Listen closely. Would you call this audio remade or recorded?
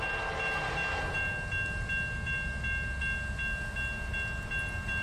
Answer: recorded